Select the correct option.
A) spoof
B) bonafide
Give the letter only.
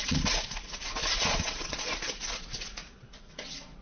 A